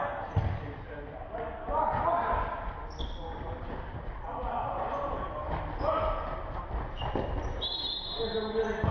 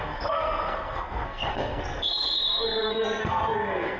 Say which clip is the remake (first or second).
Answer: second